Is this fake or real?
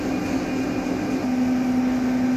real